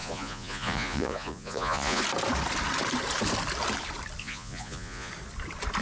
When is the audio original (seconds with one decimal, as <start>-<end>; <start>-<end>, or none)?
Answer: 2.0-4.2; 5.1-5.8

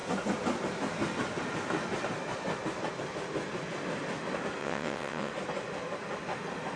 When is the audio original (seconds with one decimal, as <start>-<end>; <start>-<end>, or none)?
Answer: 0.0-4.6; 5.3-6.8

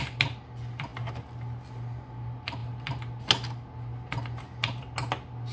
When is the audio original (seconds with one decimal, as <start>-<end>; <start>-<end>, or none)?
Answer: 0.0-5.5

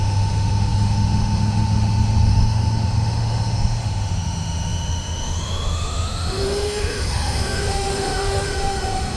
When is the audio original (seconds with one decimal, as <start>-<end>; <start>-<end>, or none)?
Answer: none

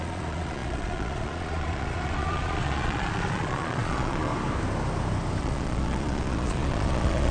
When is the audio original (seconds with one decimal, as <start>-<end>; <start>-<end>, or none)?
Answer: 4.3-5.4

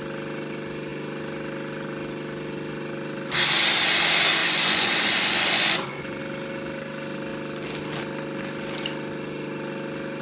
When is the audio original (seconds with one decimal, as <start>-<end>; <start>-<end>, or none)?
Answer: 0.0-4.4; 6.2-10.2

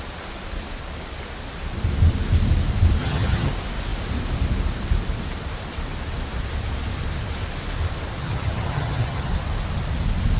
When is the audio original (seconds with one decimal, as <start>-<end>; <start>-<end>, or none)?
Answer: 0.0-3.0; 3.5-8.2; 9.3-10.4

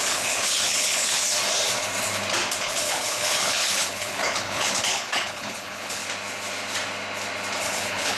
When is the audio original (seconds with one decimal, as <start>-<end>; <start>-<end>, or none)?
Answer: 1.2-2.6; 6.0-7.6